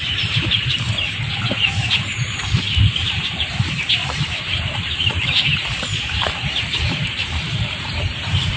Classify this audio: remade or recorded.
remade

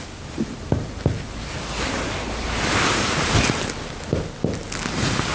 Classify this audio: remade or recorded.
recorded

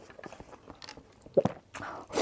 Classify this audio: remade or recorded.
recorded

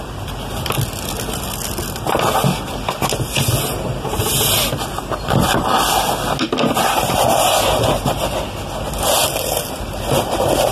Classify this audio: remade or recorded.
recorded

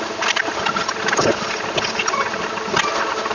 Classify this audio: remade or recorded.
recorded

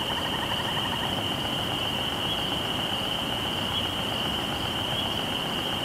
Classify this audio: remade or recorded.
remade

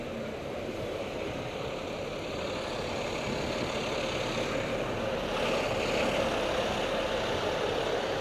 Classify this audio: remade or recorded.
recorded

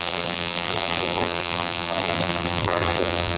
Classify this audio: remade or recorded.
remade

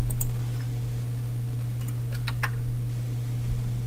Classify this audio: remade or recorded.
recorded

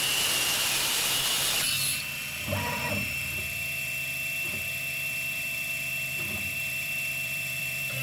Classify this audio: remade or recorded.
remade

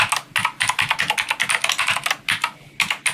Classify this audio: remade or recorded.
recorded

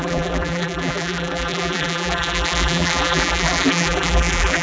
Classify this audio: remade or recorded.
remade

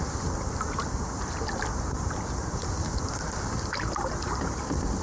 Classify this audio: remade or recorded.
recorded